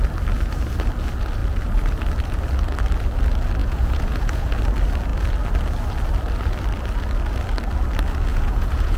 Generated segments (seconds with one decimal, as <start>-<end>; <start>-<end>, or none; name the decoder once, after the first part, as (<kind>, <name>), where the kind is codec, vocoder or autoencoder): 3.6-4.5 (vocoder, Vocos); 8.3-9.0